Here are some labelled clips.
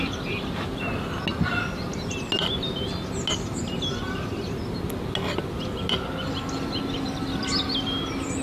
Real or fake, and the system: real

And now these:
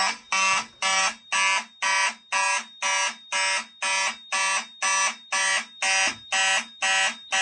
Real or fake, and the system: real